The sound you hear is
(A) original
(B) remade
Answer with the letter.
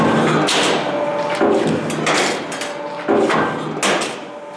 A